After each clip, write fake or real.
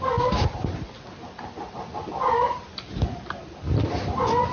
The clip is real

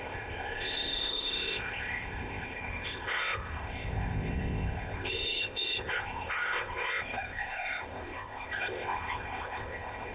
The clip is fake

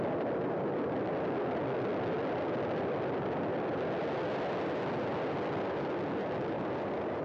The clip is real